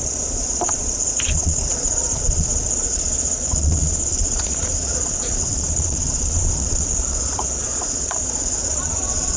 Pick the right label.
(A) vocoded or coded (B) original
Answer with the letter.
A